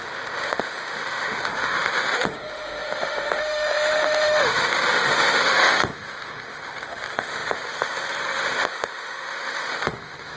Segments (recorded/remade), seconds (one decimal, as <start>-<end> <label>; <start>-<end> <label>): 0.0-10.4 remade